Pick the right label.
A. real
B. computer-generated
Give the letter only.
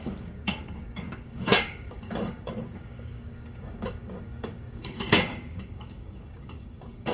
B